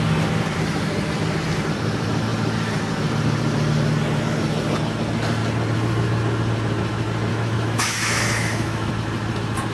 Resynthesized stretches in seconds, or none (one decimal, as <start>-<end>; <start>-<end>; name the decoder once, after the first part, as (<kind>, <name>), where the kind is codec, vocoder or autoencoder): 7.3-8.9 (autoencoder, DAC-VAE)